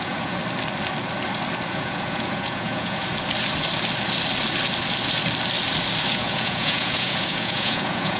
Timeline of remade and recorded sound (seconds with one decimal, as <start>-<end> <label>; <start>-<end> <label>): 0.0-0.4 remade; 0.4-1.7 recorded; 1.7-3.1 remade; 3.1-6.1 recorded; 6.1-8.2 remade